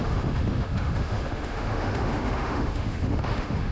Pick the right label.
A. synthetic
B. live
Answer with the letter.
A